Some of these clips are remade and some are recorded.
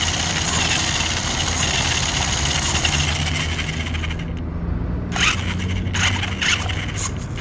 recorded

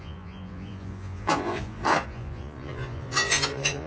remade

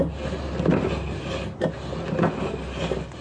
recorded